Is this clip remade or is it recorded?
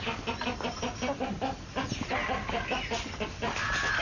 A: recorded